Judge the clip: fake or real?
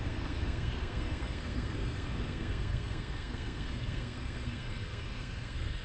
fake